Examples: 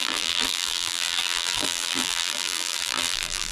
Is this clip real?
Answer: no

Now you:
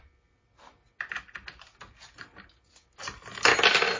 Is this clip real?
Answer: yes